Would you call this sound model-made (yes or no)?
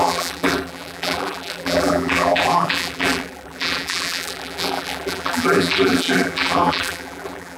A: yes